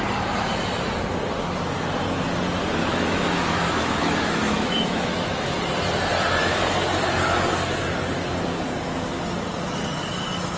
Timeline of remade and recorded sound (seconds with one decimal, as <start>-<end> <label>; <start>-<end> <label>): 0.0-2.8 recorded; 2.8-5.5 remade; 5.5-10.6 recorded